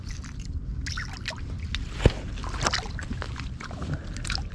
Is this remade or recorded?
recorded